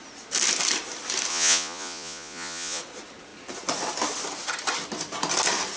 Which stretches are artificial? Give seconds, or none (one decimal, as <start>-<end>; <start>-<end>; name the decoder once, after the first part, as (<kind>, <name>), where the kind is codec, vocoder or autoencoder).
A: 1.3-2.8 (vocoder, Vocos)